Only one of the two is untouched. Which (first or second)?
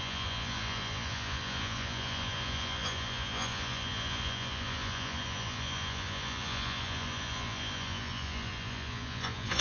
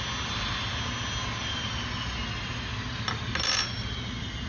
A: second